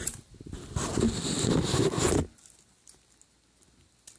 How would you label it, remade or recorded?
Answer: recorded